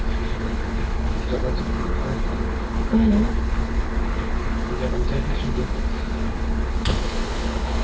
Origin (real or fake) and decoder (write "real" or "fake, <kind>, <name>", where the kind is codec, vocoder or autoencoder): fake, codec, HILCodec